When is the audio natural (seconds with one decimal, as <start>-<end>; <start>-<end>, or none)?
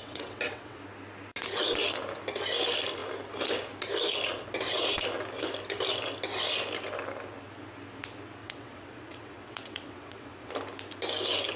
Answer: 0.8-8.4; 10.5-11.6